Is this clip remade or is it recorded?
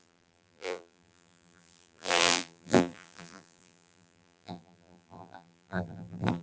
remade